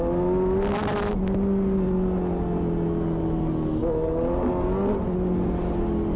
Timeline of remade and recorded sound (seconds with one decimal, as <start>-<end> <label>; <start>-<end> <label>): 0.0-6.2 recorded